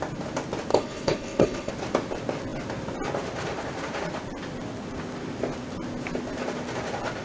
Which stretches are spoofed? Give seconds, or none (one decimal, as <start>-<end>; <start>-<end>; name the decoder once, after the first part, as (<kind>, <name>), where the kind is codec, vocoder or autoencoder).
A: 0.7-1.7 (codec, HILCodec)